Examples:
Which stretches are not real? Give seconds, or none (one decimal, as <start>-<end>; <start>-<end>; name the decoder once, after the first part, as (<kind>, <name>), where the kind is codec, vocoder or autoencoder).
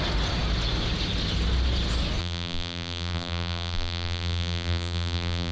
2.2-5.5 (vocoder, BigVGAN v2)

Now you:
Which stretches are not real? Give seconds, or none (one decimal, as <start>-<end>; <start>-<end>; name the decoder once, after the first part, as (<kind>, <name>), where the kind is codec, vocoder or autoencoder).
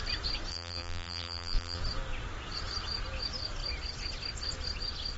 0.5-1.8 (vocoder, BigVGAN v2)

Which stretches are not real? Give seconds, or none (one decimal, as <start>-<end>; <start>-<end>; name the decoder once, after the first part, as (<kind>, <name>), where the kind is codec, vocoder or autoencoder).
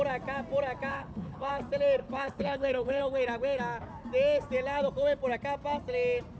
0.9-1.5 (codec, HILCodec); 2.0-3.0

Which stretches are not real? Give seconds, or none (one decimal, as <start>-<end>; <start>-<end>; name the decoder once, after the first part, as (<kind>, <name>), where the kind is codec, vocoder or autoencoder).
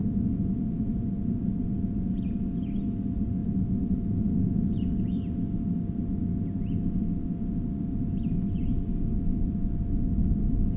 0.0-2.6 (vocoder, Vocos); 3.4-4.9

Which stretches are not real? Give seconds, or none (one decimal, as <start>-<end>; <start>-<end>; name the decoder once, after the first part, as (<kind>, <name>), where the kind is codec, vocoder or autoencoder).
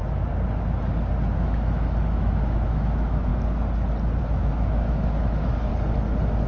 1.3-3.3 (autoencoder, DAC-VAE); 4.2-5.7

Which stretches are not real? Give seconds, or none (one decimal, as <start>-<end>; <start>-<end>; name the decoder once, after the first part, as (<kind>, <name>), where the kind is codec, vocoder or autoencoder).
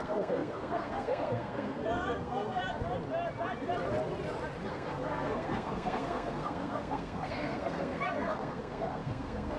0.0-2.6 (codec, SNAC); 4.7-9.6